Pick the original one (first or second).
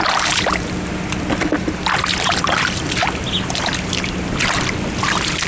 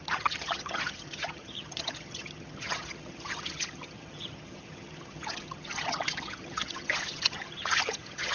first